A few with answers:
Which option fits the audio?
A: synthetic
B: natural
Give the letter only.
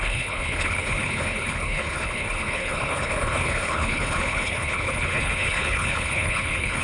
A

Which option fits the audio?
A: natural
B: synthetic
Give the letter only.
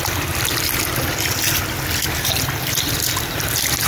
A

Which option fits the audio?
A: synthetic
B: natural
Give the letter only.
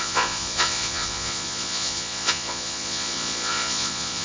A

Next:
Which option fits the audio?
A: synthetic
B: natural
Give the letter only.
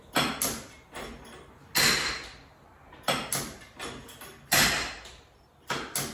B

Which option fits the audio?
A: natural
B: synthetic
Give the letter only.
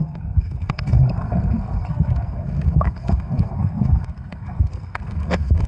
B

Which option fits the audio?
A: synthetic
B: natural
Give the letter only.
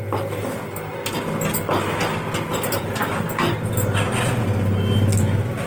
B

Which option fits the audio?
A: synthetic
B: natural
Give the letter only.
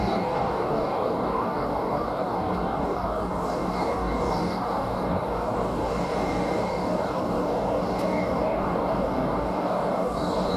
A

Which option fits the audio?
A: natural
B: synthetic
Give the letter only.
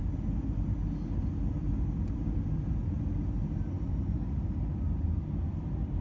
A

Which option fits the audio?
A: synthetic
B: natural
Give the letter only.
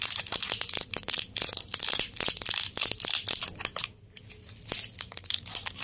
B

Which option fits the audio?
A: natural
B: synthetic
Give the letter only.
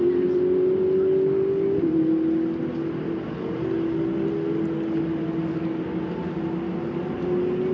A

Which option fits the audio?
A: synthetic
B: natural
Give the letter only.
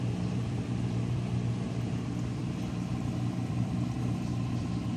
A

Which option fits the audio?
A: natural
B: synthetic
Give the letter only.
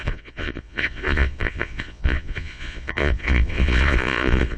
B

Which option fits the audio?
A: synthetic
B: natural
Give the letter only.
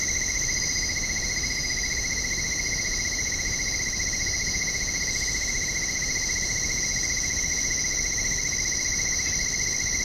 B